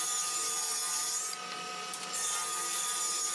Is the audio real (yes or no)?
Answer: yes